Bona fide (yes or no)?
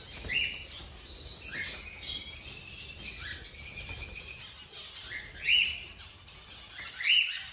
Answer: yes